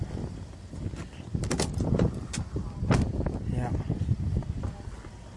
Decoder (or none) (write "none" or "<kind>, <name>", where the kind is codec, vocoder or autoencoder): none